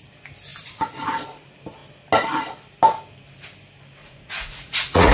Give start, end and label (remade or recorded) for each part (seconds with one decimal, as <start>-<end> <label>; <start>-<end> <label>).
0.0-4.0 recorded; 4.0-5.1 remade